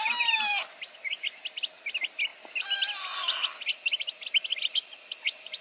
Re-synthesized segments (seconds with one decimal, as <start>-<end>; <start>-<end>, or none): none